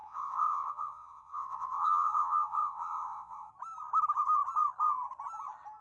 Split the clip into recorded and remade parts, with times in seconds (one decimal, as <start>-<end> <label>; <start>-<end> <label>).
0.0-3.5 remade; 3.5-5.8 recorded